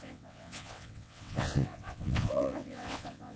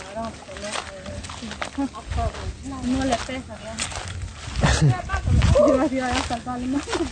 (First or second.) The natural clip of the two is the second